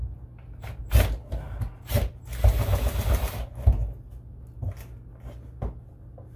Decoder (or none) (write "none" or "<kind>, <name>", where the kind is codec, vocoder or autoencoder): none